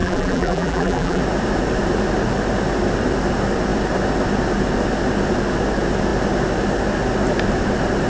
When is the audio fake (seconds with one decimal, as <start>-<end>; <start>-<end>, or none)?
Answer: 0.0-1.2